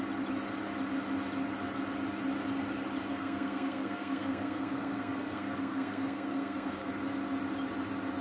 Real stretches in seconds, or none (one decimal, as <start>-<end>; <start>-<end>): 0.0-3.1; 6.9-8.2